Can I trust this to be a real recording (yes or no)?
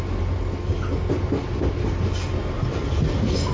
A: yes